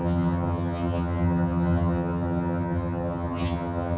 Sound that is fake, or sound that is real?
fake